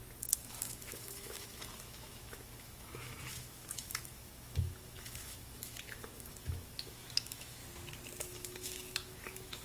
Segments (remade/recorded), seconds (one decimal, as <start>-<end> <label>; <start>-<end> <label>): 0.0-7.6 remade; 7.6-8.2 recorded; 8.2-9.6 remade